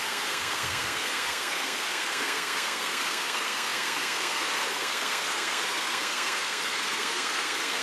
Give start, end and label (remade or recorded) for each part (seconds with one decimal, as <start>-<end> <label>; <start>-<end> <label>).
0.0-7.8 remade